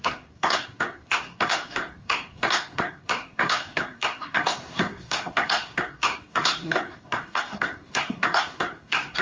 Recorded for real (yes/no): no